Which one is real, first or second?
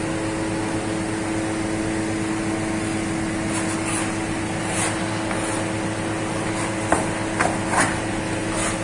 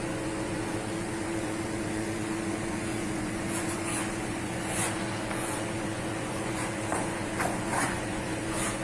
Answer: first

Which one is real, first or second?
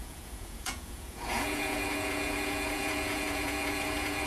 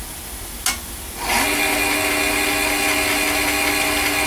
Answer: second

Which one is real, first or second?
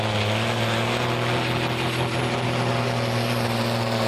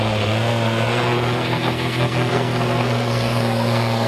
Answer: first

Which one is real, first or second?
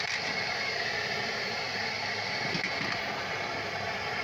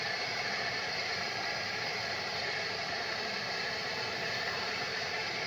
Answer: first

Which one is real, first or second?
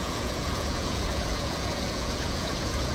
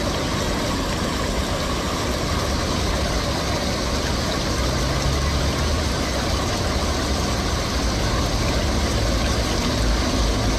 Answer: second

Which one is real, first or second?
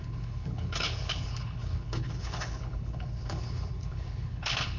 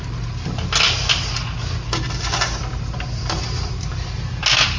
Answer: second